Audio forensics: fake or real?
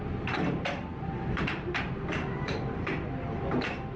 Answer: real